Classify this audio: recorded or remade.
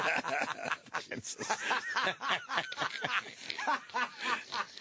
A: recorded